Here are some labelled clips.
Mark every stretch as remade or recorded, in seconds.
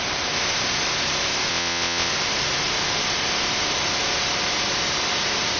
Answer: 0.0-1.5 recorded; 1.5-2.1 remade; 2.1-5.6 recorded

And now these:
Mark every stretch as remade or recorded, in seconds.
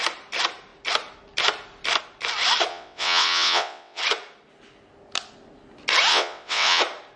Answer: 0.0-2.7 recorded; 2.7-4.0 remade; 4.0-6.1 recorded; 6.1-6.8 remade; 6.8-7.2 recorded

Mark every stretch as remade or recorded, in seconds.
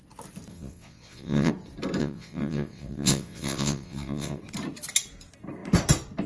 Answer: 0.0-0.5 recorded; 0.5-1.5 remade; 1.5-2.0 recorded; 2.0-4.4 remade; 4.4-6.3 recorded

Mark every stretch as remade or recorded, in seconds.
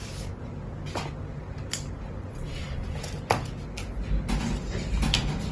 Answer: 0.0-2.3 recorded; 2.3-3.0 remade; 3.0-5.5 recorded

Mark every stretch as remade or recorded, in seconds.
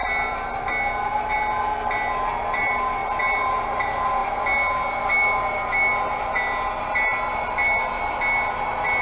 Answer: 0.0-9.0 recorded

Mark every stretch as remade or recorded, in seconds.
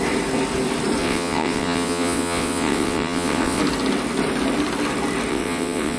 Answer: 0.0-1.0 recorded; 1.0-3.6 remade; 3.6-5.3 recorded; 5.3-6.0 remade